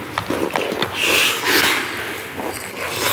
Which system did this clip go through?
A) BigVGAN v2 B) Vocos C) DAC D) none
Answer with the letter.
D